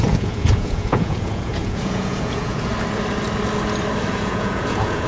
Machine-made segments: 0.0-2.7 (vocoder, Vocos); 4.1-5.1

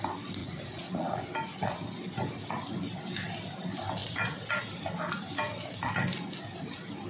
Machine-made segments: 0.4-1.2 (vocoder, Vocos)

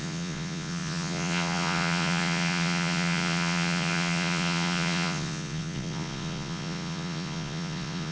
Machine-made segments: 0.0-8.1 (vocoder, Vocos)

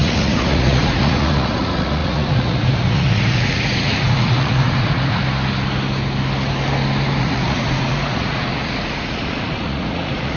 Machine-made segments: 0.0-5.2 (vocoder, Vocos); 7.2-10.4

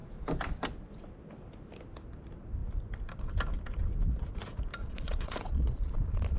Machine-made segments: 4.8-6.4 (vocoder, Vocos)

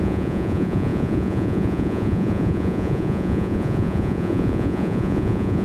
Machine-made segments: 0.0-5.6 (vocoder, Vocos)

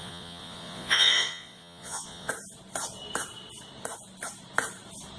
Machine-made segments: 0.0-2.3 (vocoder, Vocos)